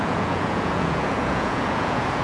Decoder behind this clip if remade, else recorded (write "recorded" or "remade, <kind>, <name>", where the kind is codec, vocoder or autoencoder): remade, vocoder, Vocos